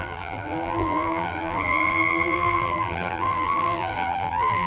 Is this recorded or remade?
remade